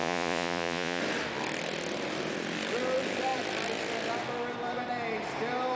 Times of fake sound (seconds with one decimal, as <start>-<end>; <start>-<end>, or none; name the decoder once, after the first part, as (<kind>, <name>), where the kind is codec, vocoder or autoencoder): 0.0-1.0 (vocoder, Vocos)